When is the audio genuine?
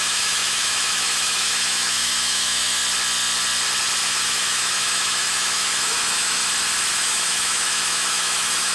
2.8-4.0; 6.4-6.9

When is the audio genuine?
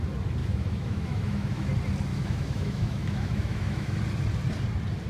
0.0-0.4; 1.7-2.1; 4.0-5.1